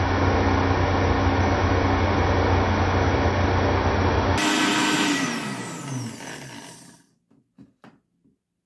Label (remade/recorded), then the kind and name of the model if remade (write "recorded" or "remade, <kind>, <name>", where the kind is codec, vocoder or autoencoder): recorded